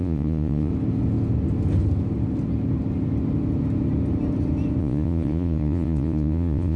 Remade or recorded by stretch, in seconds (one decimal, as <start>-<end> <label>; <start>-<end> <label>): 0.0-0.7 remade; 0.7-4.8 recorded; 4.8-6.8 remade

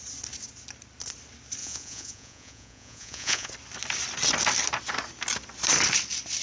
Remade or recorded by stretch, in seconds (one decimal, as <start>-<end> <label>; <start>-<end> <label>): 0.0-1.6 recorded; 1.6-3.5 remade; 3.5-6.4 recorded

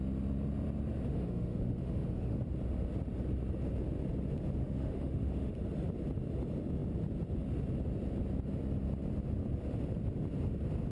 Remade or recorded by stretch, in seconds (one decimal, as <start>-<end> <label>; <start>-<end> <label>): 0.0-1.1 recorded; 1.1-2.4 remade; 2.4-4.6 recorded; 4.6-5.5 remade; 5.5-10.9 recorded

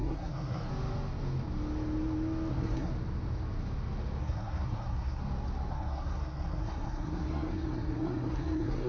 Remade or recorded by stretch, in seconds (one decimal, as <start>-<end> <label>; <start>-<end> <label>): 0.0-0.7 remade; 0.7-2.5 recorded; 2.5-2.9 remade; 2.9-4.2 recorded; 4.2-5.2 remade; 5.2-5.7 recorded; 5.7-8.9 remade

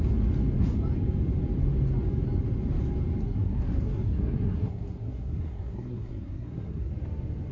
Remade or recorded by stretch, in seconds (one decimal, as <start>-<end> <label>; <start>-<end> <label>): 0.0-3.2 recorded; 3.2-6.9 remade; 6.9-7.5 recorded

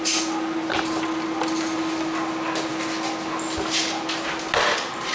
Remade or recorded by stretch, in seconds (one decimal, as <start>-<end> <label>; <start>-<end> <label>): 0.0-5.1 recorded

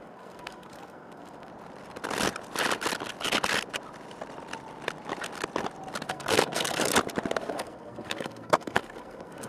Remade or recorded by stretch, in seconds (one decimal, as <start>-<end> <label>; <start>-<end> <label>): 0.0-1.5 remade; 1.5-6.1 recorded; 6.1-6.9 remade; 6.9-7.4 recorded; 7.4-9.5 remade

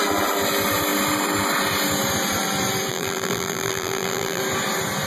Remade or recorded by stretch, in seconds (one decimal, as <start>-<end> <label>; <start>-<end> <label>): 0.0-2.9 recorded; 2.9-4.4 remade; 4.4-5.1 recorded